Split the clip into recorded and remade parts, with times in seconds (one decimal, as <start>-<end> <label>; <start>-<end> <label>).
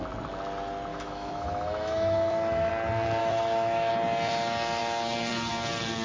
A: 0.0-0.9 recorded; 0.9-2.7 remade; 2.7-3.2 recorded; 3.2-3.9 remade; 3.9-6.0 recorded